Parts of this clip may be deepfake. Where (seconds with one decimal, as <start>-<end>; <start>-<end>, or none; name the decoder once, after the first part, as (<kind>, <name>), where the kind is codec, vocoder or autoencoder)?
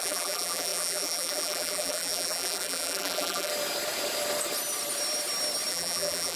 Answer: 0.0-3.5 (vocoder, BigVGAN v2); 5.7-6.4